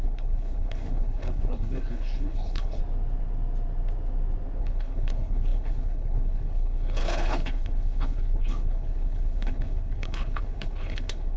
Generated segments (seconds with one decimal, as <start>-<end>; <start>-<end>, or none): 0.0-2.8; 4.6-11.4